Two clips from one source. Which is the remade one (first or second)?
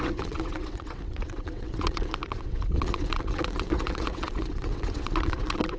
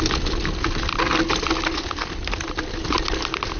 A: first